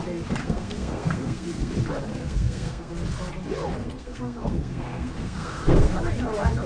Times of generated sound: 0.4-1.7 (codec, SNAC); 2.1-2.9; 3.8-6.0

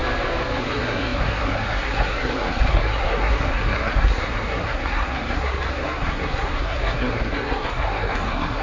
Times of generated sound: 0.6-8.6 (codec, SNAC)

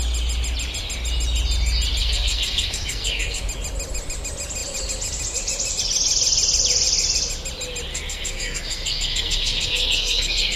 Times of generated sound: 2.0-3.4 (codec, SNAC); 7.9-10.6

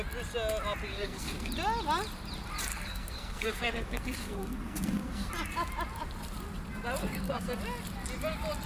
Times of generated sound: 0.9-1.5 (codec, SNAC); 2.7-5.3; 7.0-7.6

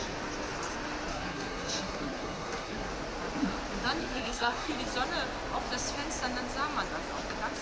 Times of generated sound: 1.1-2.9 (codec, SNAC); 4.0-4.7

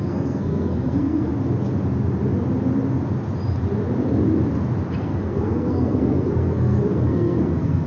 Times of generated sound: 0.0-1.3 (codec, SNAC); 5.0-7.9

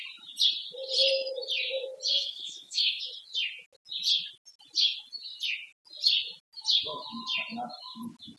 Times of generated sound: 2.1-3.0 (codec, SNAC)